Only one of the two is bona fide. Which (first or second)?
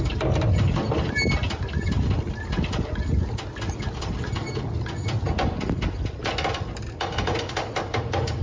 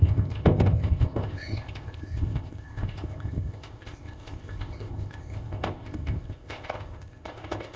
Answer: first